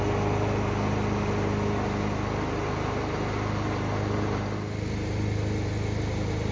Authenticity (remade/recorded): recorded